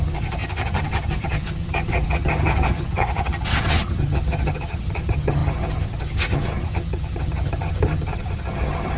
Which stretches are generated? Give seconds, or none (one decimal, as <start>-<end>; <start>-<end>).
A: 0.0-9.0